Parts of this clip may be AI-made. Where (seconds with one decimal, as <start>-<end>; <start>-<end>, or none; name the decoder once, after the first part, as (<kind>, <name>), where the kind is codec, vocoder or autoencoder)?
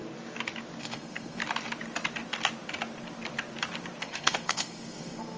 0.8-1.4 (codec, SNAC); 4.0-5.4